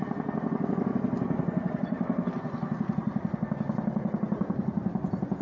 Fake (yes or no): no